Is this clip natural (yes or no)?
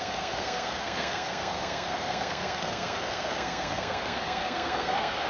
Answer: no